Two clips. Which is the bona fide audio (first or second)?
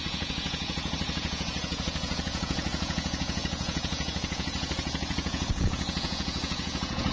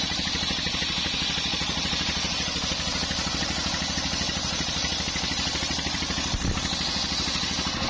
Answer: second